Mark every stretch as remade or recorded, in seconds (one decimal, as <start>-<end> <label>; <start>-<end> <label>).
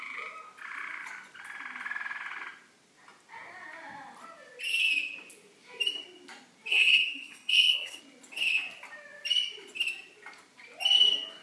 0.0-6.7 recorded; 6.7-8.0 remade; 8.0-11.4 recorded